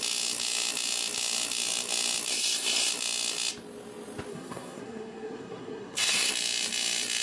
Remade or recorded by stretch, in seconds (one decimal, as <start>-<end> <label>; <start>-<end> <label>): 0.0-2.3 recorded; 2.3-2.9 remade; 2.9-4.3 recorded; 4.3-6.3 remade; 6.3-7.2 recorded